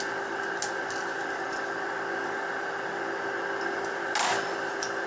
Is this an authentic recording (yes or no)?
yes